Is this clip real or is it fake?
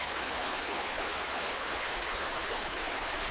fake